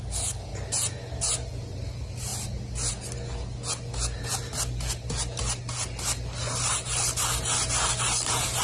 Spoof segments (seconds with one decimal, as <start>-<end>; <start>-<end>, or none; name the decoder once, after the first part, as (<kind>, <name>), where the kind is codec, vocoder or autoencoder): none